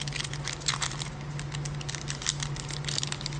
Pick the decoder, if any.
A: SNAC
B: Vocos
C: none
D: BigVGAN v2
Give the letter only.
C